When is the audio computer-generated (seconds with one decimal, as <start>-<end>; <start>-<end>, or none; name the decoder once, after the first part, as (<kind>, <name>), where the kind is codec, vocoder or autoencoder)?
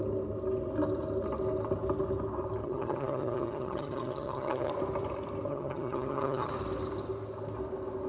2.6-4.7 (vocoder, HiFi-GAN); 5.5-6.5